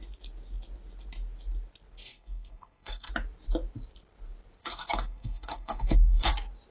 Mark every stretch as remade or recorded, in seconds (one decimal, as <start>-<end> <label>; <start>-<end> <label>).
0.0-2.1 recorded; 2.1-3.1 remade; 3.1-4.6 recorded; 4.6-6.3 remade; 6.3-6.7 recorded